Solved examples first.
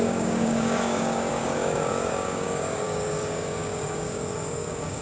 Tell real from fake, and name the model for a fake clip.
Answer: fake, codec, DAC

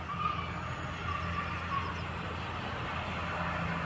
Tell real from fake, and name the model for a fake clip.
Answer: real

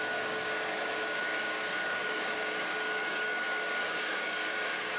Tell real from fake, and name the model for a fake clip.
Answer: fake, codec, DAC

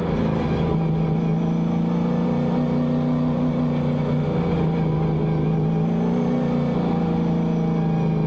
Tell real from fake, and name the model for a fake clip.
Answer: real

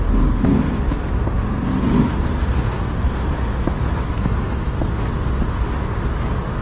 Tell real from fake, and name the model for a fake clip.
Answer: real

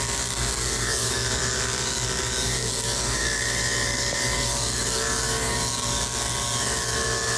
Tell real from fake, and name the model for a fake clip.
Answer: fake, codec, DAC